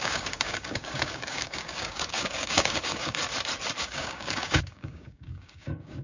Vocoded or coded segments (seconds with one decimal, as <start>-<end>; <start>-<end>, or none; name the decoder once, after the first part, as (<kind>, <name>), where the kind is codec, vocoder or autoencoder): 0.0-3.2 (codec, DAC); 3.8-6.0